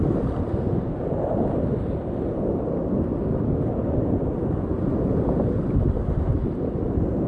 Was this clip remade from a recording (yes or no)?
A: no